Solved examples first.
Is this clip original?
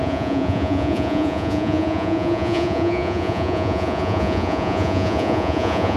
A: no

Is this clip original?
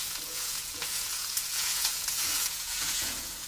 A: no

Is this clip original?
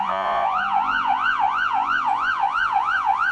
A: no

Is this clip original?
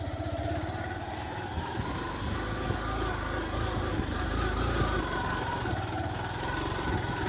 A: yes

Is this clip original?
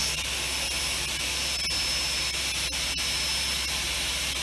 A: yes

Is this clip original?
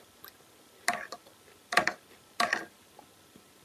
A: yes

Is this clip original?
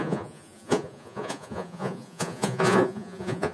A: no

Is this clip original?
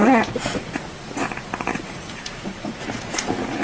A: no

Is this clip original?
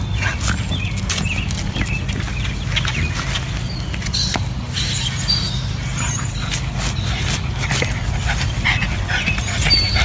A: yes